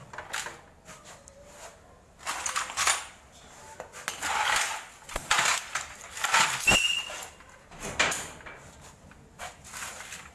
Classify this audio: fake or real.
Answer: real